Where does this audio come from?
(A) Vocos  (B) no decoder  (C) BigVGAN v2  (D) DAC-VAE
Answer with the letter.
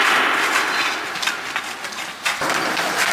B